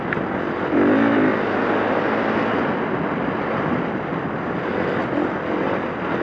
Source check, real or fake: real